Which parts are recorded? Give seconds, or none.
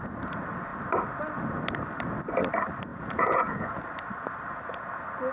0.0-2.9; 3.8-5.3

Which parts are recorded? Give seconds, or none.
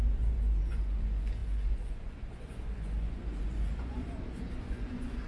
none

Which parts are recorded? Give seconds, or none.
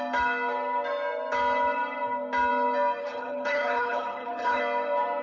0.0-3.0; 4.6-5.2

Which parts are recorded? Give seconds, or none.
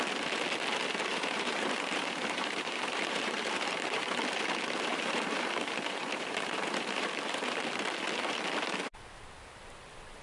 0.0-1.1; 4.1-4.9; 7.6-10.2